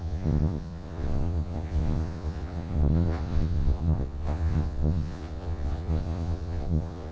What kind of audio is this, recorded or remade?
remade